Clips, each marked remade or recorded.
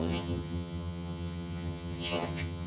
remade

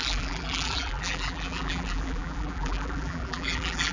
remade